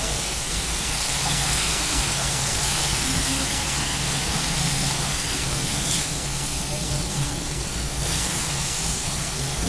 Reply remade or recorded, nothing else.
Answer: remade